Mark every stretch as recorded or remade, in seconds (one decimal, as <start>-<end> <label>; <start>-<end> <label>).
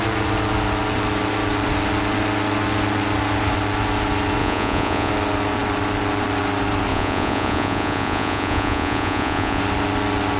0.0-4.4 recorded; 4.4-5.1 remade; 5.1-6.9 recorded; 6.9-9.6 remade; 9.6-10.4 recorded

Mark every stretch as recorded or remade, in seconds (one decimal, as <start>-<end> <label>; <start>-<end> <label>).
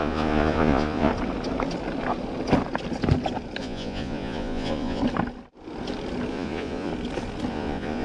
0.0-1.1 remade; 1.1-3.6 recorded; 3.6-5.0 remade; 5.0-6.3 recorded; 6.3-6.9 remade; 6.9-7.5 recorded; 7.5-8.0 remade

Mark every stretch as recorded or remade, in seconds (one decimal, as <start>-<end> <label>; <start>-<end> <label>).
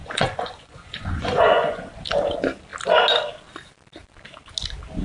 0.0-1.9 remade; 1.9-5.0 recorded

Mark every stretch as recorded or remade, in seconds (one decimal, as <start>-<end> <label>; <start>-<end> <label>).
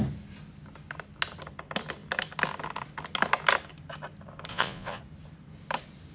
0.0-4.5 recorded; 4.5-5.0 remade; 5.0-6.1 recorded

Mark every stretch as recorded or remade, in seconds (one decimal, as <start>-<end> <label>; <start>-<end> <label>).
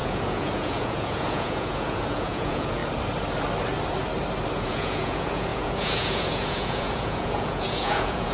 0.0-2.8 remade; 2.8-4.5 recorded; 4.5-8.3 remade